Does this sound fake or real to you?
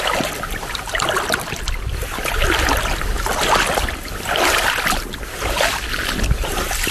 real